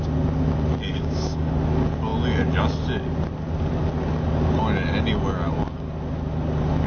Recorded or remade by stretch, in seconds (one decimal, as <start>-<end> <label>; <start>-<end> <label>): 0.0-0.9 recorded; 0.9-1.5 remade; 1.5-6.9 recorded